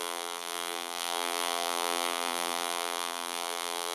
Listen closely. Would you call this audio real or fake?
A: fake